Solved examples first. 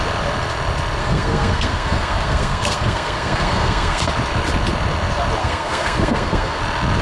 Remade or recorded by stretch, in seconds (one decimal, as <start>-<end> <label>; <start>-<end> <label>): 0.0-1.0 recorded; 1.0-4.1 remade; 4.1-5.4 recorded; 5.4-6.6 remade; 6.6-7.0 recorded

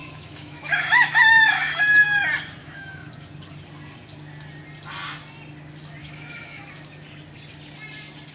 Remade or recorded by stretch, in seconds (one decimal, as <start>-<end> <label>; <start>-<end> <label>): 0.0-1.8 remade; 1.8-2.6 recorded; 2.6-3.1 remade; 3.1-6.0 recorded; 6.0-6.6 remade; 6.6-8.3 recorded

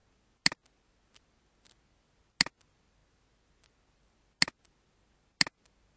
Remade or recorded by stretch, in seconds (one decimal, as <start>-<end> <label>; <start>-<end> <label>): 0.0-6.0 recorded

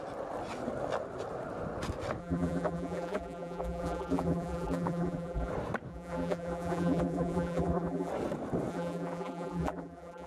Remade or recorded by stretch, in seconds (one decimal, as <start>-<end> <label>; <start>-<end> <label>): 0.0-2.2 recorded; 2.2-5.5 remade; 5.5-5.9 recorded; 5.9-8.1 remade; 8.1-8.7 recorded; 8.7-10.3 remade

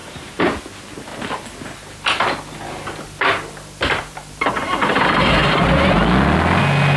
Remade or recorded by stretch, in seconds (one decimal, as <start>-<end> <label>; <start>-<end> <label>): 0.0-0.6 remade; 0.6-7.0 recorded

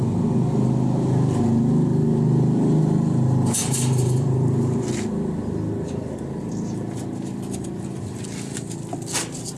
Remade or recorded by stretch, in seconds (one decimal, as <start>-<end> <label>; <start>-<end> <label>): 0.0-3.6 recorded; 3.6-4.9 remade; 4.9-9.6 recorded